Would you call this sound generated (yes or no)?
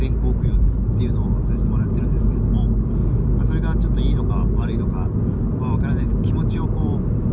no